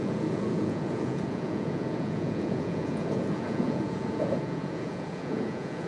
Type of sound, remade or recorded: remade